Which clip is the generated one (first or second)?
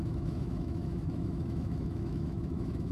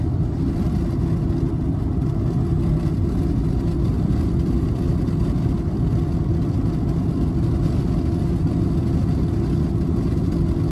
first